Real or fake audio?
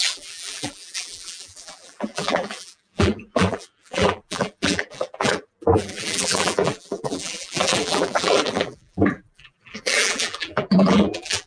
fake